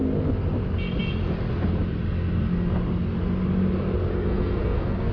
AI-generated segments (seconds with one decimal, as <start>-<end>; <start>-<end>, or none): 4.1-5.1